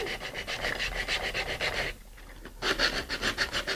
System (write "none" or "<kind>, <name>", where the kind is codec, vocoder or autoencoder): none